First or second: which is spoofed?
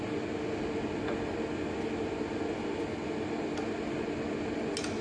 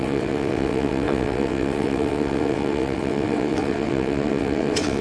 second